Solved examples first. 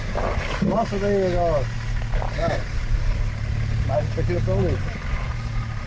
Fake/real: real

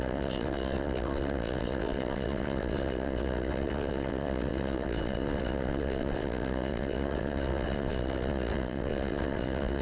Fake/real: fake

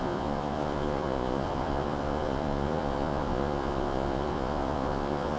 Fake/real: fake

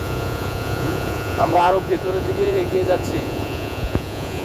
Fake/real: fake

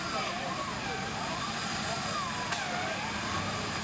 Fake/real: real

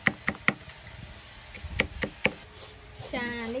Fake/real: real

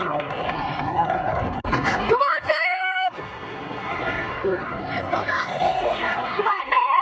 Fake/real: fake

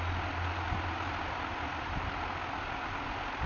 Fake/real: real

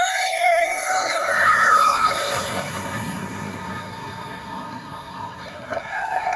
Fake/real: fake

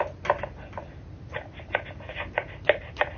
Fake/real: real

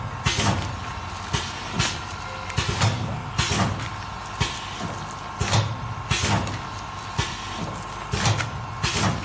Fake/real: real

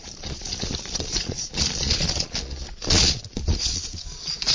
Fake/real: fake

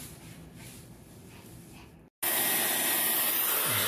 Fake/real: real